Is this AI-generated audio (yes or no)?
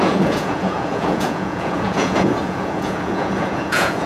yes